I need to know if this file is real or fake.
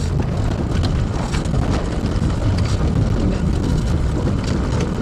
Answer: real